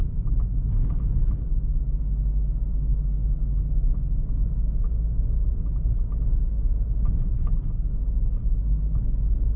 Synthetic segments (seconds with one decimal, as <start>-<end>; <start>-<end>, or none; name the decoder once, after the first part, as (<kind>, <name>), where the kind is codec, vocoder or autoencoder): none